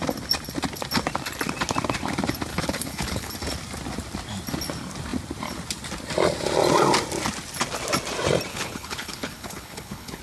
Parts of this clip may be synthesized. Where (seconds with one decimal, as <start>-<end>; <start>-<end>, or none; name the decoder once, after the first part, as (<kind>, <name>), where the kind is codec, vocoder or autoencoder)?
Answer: 2.5-3.3 (codec, HILCodec); 8.5-10.2